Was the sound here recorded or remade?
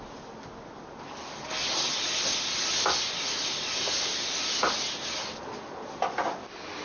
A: recorded